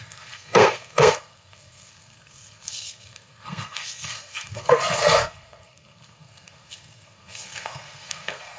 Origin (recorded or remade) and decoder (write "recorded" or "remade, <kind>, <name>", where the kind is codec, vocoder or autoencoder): remade, codec, SNAC